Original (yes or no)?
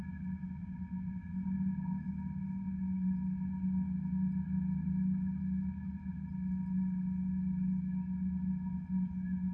yes